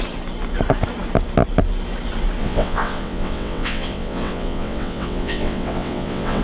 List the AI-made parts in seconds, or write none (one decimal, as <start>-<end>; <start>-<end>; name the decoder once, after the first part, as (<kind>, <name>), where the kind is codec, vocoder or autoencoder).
2.4-6.4 (vocoder, WaveNeXt)